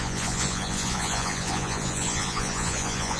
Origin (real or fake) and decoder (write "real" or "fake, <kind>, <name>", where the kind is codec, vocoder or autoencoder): fake, vocoder, Vocos